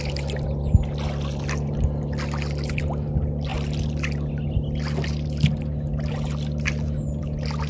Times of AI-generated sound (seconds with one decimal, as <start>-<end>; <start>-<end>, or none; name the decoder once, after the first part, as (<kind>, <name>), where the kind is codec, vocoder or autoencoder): none